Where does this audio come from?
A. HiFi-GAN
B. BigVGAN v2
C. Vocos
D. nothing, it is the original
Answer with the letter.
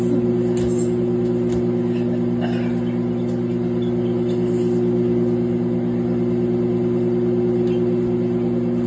D